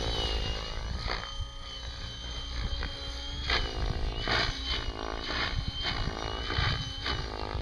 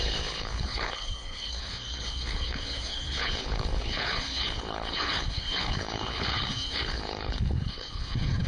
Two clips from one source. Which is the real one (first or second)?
first